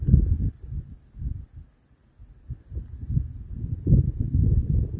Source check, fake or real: real